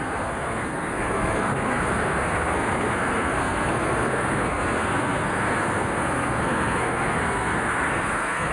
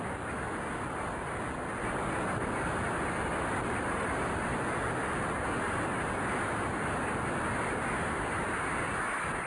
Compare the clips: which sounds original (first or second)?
second